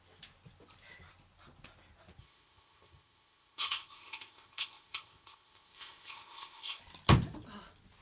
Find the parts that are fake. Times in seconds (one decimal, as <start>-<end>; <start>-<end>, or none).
2.2-6.8